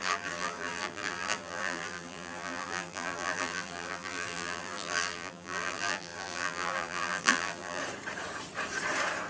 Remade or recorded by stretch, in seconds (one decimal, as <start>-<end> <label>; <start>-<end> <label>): 0.0-7.8 remade; 7.8-9.3 recorded